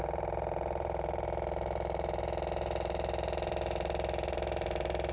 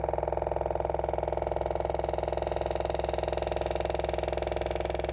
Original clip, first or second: second